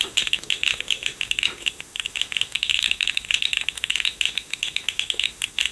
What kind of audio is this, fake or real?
fake